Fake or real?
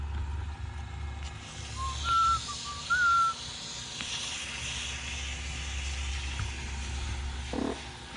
real